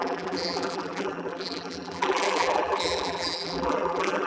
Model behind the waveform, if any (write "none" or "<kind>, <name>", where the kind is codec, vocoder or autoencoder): vocoder, BigVGAN v2